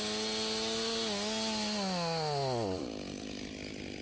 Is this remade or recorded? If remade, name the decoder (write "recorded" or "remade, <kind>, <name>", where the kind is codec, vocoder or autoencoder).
recorded